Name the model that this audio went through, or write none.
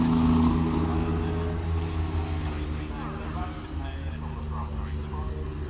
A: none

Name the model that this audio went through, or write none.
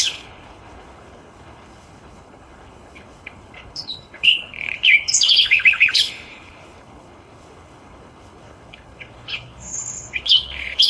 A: codec, HILCodec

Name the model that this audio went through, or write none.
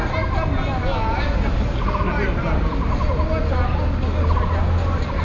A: none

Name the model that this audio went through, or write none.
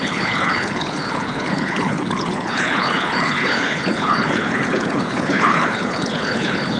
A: codec, HILCodec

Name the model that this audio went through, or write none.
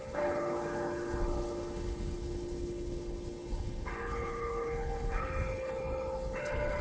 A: codec, HILCodec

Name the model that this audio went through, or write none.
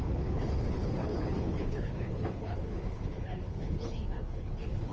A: codec, HILCodec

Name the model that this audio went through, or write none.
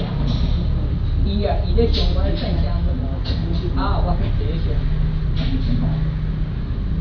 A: none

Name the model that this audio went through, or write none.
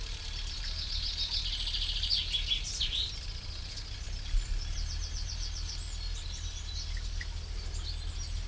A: none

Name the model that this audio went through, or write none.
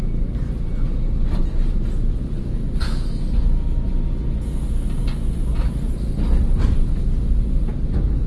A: none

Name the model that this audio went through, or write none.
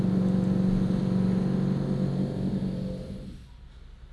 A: none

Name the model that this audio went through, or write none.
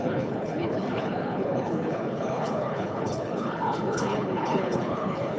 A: codec, HILCodec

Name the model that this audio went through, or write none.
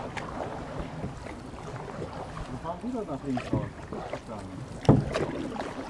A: none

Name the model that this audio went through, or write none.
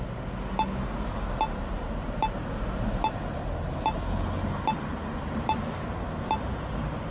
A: none